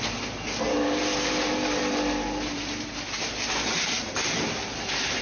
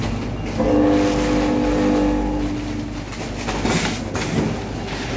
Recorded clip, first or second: second